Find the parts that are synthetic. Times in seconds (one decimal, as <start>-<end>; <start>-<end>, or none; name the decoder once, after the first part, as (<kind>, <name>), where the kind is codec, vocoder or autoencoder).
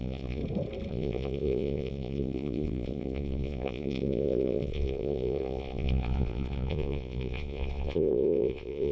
0.0-0.4 (vocoder, Vocos); 0.9-8.9